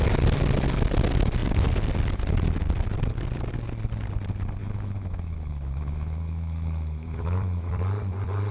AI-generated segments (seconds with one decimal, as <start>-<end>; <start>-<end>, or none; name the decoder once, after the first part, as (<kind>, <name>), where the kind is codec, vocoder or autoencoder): 4.6-7.7 (autoencoder, DAC-VAE)